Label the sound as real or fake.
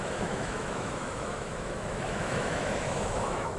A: fake